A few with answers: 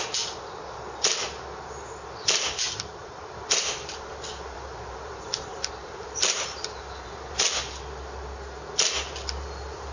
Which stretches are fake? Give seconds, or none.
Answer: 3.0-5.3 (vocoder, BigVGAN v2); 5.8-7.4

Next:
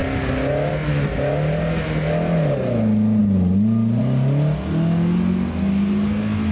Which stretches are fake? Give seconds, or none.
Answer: none